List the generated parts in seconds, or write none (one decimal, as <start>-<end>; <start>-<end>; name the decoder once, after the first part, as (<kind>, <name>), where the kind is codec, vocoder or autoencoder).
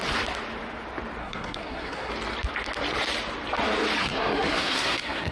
1.2-2.1 (codec, SNAC); 4.0-5.3